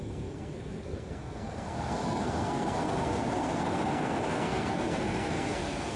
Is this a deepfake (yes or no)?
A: yes